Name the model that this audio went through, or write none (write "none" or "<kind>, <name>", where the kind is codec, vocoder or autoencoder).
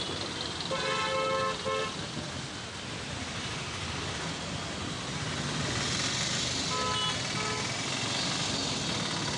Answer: none